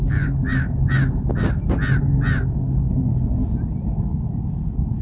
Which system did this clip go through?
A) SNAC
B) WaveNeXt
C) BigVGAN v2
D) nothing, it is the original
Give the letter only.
D